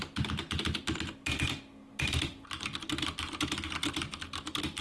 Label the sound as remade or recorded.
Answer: recorded